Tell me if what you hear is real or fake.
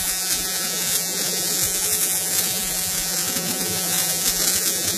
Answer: fake